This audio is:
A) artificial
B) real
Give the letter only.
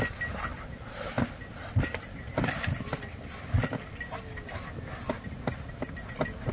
B